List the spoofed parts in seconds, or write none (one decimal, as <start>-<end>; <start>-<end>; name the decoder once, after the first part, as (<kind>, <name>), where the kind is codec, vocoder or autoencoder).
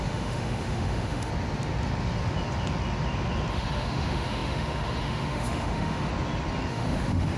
0.0-1.3 (autoencoder, DAC-VAE); 3.5-6.1; 6.7-7.4